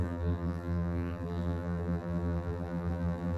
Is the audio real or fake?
fake